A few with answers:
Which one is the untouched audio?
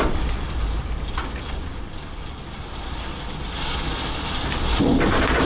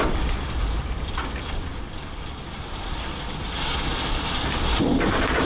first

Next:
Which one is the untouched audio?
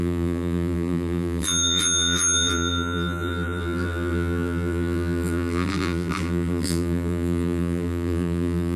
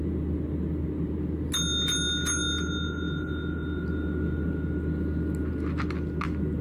second